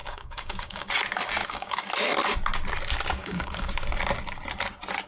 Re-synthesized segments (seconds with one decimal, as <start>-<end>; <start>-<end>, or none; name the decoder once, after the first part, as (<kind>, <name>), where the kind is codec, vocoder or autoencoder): 0.0-0.9 (codec, DAC); 1.4-1.9; 3.2-3.7